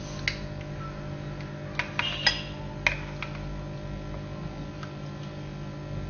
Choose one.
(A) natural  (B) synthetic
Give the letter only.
A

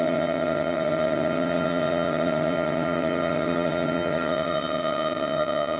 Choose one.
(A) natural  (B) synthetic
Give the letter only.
B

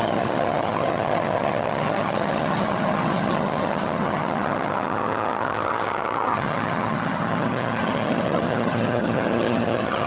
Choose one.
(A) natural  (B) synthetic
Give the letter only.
B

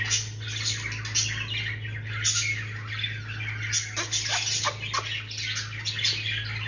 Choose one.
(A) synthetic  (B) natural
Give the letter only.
B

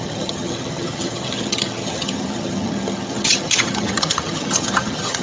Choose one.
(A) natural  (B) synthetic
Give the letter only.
B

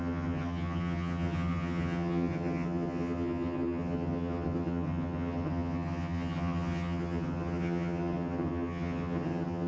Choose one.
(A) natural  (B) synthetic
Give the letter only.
B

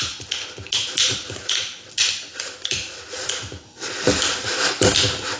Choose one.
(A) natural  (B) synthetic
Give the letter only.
A